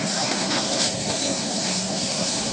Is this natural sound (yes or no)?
no